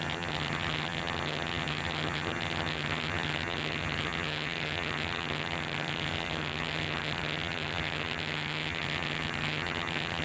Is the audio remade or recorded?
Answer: remade